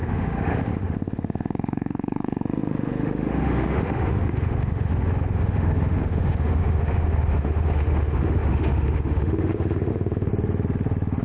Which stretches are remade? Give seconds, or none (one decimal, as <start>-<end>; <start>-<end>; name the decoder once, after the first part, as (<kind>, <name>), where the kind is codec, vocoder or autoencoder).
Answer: 0.0-10.3 (autoencoder, DAC-VAE)